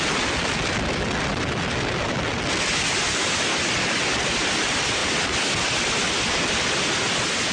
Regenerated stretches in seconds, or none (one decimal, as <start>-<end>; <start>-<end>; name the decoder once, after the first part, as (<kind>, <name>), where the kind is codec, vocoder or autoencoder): none